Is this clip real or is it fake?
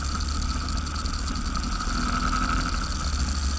real